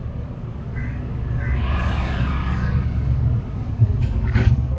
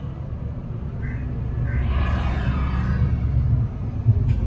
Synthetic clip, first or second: first